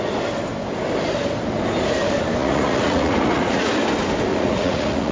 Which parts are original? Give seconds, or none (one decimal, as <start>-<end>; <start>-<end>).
0.0-2.4; 3.7-4.3